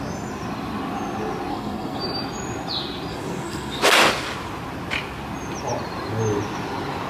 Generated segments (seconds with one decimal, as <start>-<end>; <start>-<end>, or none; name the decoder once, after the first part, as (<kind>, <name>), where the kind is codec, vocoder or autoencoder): 1.5-2.0 (codec, SNAC); 3.1-3.8